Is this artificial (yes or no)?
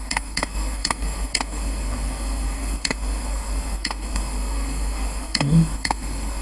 yes